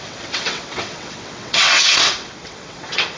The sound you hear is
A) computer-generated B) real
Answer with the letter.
A